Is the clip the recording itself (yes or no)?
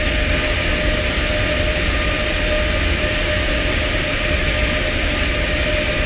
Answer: yes